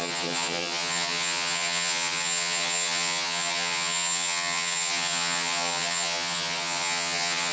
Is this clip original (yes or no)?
no